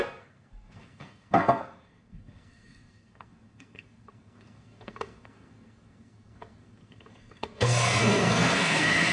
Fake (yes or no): yes